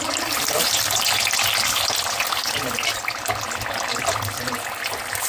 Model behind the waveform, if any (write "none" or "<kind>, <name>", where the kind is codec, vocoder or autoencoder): none